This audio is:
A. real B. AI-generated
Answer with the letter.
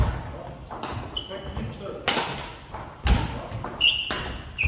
A